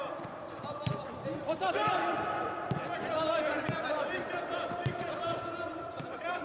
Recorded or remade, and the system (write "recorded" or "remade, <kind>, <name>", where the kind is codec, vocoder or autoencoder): remade, vocoder, BigVGAN v2